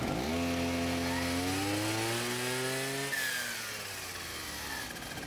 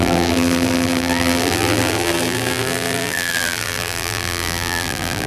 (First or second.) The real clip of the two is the first